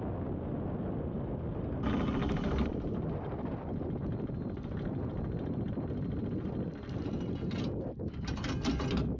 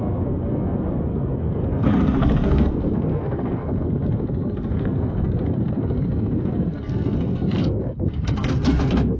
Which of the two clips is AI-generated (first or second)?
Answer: second